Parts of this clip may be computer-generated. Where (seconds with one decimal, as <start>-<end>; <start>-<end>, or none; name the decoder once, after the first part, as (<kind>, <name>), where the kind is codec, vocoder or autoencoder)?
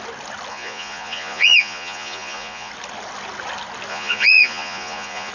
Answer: 0.5-2.7 (vocoder, Vocos); 3.9-5.3